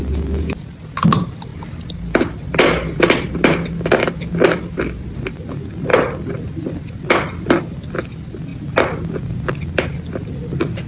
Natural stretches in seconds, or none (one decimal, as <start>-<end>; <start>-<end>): 0.0-10.9